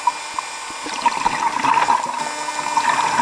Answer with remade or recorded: recorded